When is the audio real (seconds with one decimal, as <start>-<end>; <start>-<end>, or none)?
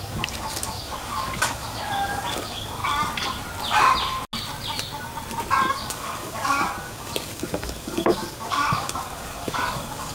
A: 2.8-5.7